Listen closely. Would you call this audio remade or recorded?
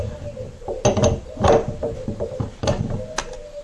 recorded